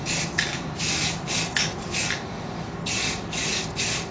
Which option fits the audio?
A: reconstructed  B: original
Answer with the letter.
B